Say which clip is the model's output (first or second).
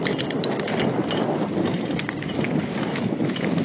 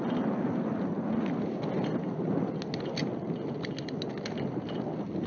first